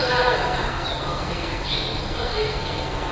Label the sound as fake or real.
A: fake